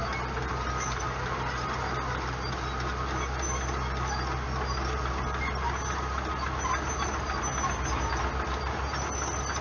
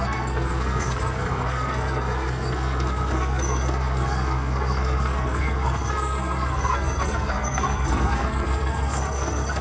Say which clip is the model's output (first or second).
second